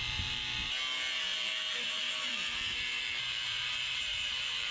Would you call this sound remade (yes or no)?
yes